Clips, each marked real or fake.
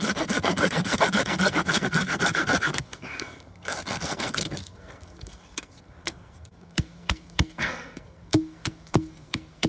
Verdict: fake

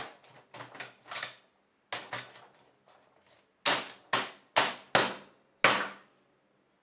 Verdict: real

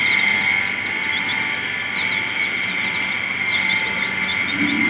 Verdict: real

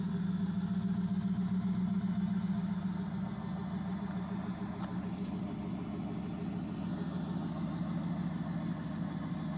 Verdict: real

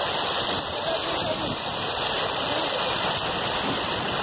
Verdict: real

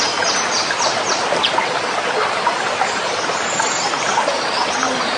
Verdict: real